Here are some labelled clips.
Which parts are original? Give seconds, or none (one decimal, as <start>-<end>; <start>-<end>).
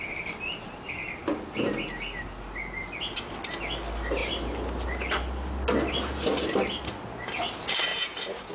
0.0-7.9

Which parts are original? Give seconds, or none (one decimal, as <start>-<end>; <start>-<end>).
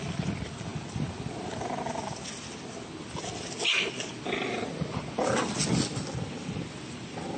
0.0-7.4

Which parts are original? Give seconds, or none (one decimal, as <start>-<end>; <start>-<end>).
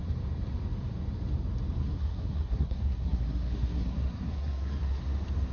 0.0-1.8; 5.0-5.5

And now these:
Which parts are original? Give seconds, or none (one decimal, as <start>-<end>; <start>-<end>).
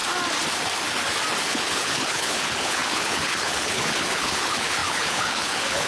0.0-1.4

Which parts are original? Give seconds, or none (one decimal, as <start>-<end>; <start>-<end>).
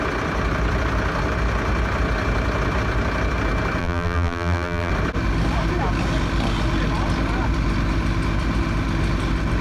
0.0-3.8; 4.9-9.6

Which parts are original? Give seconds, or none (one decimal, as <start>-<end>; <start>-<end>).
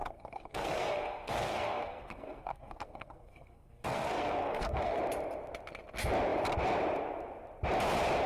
5.0-8.3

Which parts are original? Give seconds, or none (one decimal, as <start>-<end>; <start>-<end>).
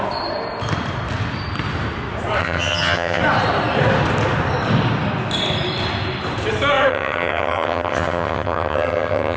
0.0-2.4; 3.2-6.9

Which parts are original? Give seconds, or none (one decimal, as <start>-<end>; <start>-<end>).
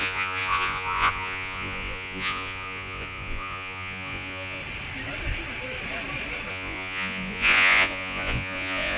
4.6-6.5